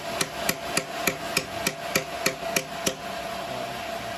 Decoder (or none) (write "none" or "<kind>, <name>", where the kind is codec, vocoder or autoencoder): none